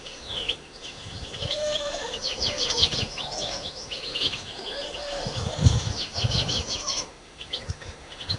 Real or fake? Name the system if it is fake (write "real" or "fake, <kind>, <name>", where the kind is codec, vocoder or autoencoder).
fake, autoencoder, DAC-VAE